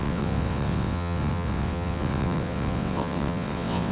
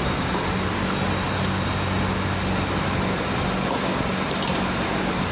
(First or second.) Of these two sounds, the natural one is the second